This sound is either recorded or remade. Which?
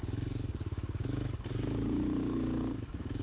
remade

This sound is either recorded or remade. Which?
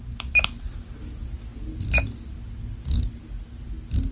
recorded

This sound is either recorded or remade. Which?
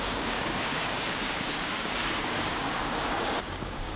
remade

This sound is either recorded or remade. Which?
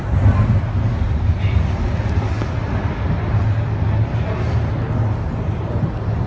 recorded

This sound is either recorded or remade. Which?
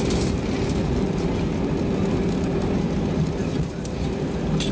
recorded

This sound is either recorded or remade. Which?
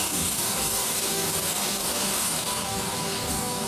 remade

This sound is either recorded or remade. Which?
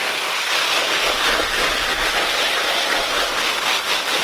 recorded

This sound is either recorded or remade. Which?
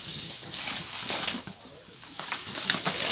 remade